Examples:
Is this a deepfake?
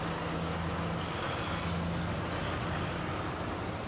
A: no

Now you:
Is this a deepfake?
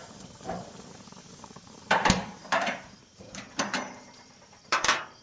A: yes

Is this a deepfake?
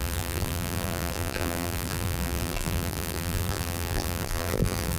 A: yes